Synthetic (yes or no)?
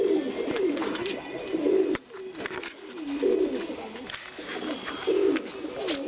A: no